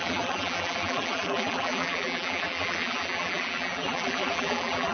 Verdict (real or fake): fake